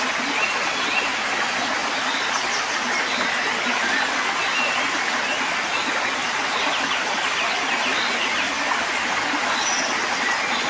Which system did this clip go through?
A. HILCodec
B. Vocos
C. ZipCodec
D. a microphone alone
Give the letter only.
D